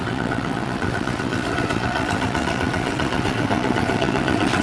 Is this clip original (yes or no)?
no